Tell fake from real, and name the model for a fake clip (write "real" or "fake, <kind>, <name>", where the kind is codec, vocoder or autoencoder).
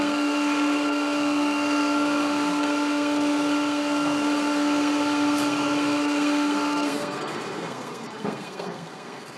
fake, codec, SNAC